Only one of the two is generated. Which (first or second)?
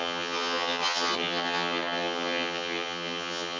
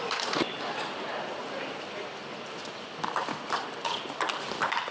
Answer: first